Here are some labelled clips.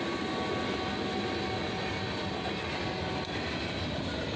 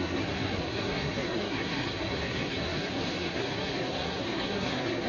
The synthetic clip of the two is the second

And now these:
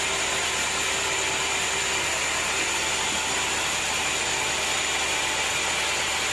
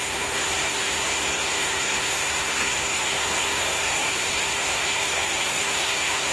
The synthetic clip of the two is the second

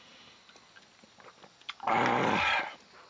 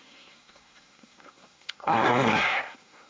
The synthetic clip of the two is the second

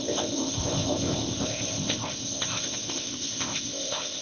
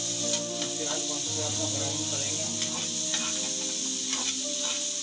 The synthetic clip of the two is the first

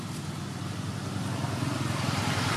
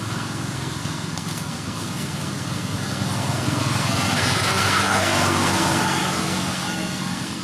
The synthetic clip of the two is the second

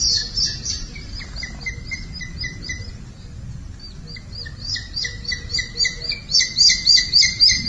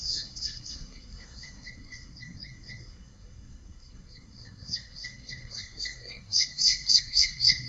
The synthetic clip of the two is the second